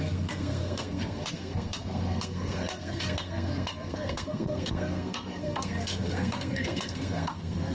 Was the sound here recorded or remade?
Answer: remade